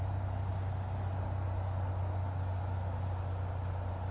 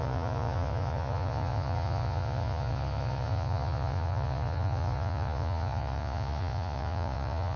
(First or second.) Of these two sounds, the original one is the first